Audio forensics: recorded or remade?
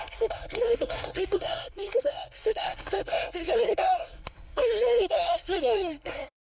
remade